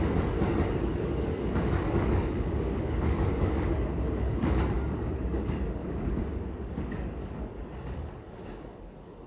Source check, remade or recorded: remade